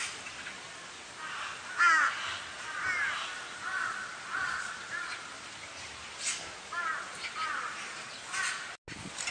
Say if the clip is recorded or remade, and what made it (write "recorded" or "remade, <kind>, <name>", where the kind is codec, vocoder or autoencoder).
recorded